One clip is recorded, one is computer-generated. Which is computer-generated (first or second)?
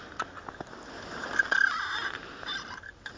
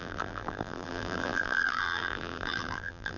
second